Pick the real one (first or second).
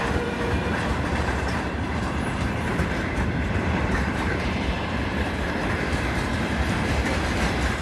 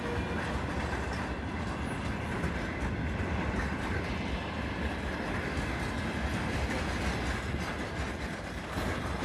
second